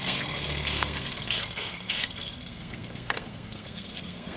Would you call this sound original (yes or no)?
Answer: no